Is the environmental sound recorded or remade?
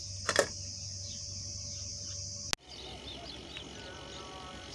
recorded